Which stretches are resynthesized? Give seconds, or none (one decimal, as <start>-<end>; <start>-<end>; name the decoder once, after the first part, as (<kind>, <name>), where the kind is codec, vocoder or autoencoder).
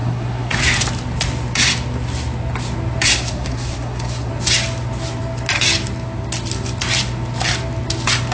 0.0-0.6 (codec, SNAC); 3.1-4.3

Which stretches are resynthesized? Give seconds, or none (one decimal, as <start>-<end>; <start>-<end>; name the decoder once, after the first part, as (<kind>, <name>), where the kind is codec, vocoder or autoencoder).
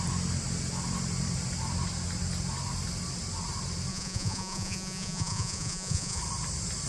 3.9-6.2 (vocoder, Vocos)